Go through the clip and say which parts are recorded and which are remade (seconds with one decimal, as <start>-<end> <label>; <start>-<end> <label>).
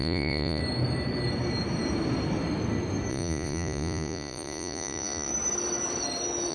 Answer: 0.0-0.6 remade; 0.6-3.1 recorded; 3.1-5.3 remade; 5.3-6.5 recorded